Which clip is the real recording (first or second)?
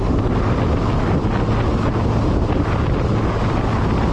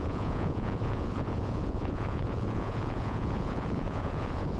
first